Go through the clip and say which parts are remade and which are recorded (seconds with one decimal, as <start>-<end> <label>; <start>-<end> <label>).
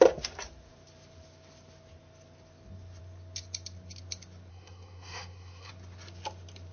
0.0-4.5 recorded; 4.5-5.7 remade; 5.7-6.7 recorded